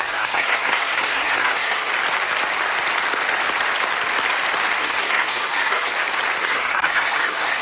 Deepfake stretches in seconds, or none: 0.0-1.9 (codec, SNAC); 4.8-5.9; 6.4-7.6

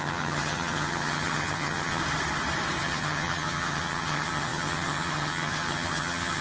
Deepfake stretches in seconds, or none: 0.0-2.0 (vocoder, HiFi-GAN); 2.8-6.4

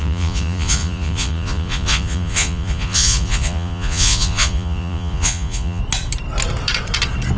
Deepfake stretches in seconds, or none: 0.0-5.8 (vocoder, Vocos)